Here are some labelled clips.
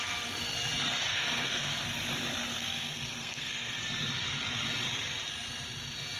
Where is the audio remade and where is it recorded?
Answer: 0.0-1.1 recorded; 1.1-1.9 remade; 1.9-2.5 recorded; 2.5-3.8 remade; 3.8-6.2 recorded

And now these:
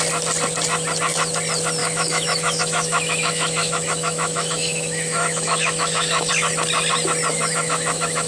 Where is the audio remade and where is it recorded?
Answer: 0.0-1.8 recorded; 1.8-6.3 remade; 6.3-7.3 recorded; 7.3-8.3 remade

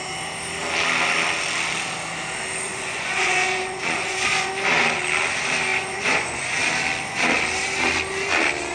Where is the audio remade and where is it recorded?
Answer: 0.0-2.7 recorded; 2.7-4.5 remade; 4.5-5.7 recorded; 5.7-6.6 remade; 6.6-8.7 recorded